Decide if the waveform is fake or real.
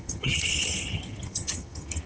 fake